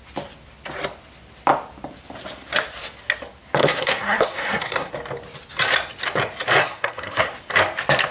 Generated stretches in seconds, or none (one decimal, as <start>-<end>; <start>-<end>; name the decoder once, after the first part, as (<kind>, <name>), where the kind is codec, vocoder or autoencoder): 3.6-4.9 (codec, SNAC); 6.6-7.3